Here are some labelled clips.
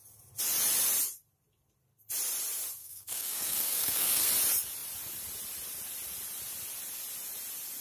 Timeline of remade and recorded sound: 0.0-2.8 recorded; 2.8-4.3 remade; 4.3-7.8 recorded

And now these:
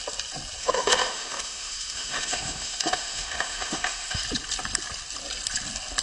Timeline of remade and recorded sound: 0.0-0.6 recorded; 0.6-4.2 remade; 4.2-6.0 recorded